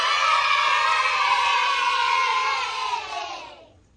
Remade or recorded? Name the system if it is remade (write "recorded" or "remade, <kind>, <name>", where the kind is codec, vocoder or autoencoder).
remade, vocoder, Vocos